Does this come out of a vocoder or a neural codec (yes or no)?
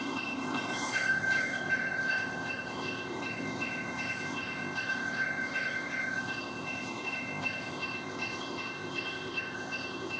yes